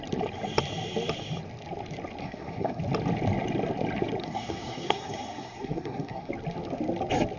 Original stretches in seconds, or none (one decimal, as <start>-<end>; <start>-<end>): 0.0-2.2; 2.8-4.2; 6.3-7.4